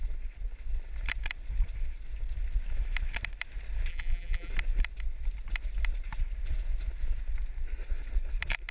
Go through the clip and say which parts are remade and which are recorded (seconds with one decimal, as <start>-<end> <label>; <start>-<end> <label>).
0.0-3.9 recorded; 3.9-4.5 remade; 4.5-8.7 recorded